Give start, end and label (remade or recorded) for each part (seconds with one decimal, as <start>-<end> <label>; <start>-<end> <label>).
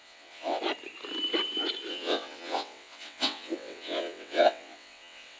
0.0-0.6 remade; 0.6-1.9 recorded; 1.9-5.4 remade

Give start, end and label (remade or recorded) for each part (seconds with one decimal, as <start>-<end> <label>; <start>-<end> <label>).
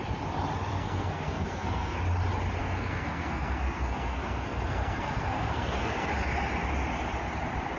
0.0-0.7 recorded; 0.7-2.0 remade; 2.0-2.6 recorded; 2.6-6.1 remade; 6.1-7.8 recorded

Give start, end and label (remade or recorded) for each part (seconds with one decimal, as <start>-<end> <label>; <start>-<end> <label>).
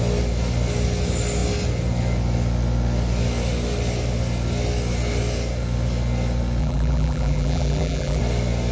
0.0-6.6 recorded; 6.6-8.2 remade; 8.2-8.7 recorded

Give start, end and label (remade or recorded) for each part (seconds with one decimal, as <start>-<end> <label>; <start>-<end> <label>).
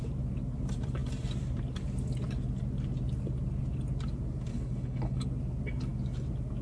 0.0-4.5 recorded; 4.5-5.2 remade; 5.2-6.6 recorded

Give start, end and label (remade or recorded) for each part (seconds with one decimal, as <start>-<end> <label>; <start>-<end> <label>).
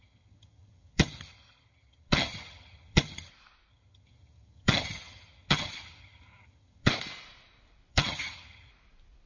0.0-3.3 remade; 3.3-3.7 recorded; 3.7-6.9 remade; 6.9-7.9 recorded; 7.9-8.7 remade; 8.7-9.3 recorded